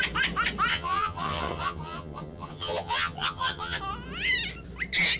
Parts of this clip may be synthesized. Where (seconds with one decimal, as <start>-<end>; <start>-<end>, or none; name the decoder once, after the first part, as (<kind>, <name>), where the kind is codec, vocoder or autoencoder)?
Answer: 0.7-3.8 (vocoder, HiFi-GAN)